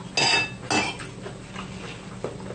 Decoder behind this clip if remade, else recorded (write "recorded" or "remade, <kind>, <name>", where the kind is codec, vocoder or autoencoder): recorded